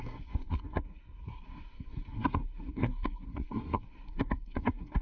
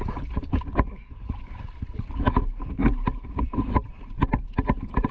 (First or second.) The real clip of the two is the second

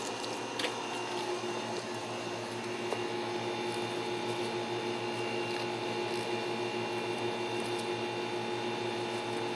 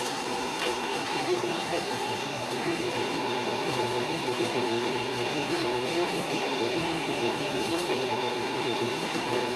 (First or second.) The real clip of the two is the first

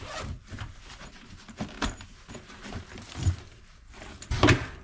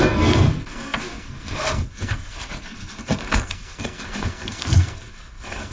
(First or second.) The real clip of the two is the first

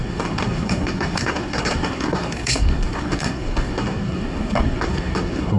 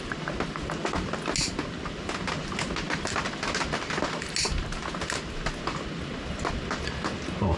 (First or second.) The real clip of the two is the second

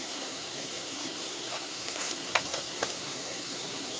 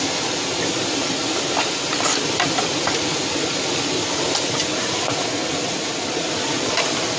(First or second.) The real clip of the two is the second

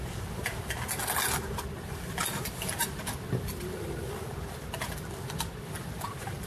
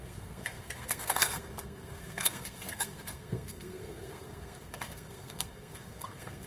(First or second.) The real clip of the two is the first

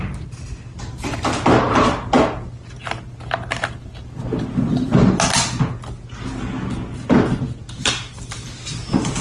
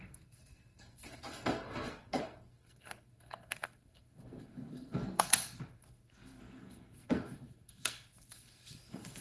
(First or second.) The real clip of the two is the first